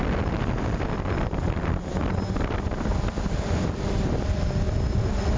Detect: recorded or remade recorded